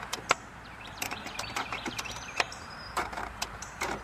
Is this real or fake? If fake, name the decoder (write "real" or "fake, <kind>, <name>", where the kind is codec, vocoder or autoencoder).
fake, vocoder, BigVGAN v2